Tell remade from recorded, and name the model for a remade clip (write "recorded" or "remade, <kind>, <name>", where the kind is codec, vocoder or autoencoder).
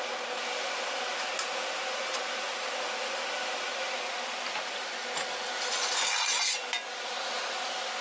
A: recorded